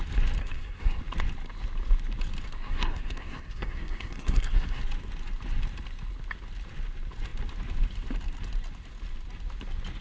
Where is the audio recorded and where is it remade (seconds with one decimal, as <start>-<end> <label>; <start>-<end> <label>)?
0.0-0.4 recorded; 0.4-1.0 remade; 1.0-2.5 recorded; 2.5-4.8 remade; 4.8-10.0 recorded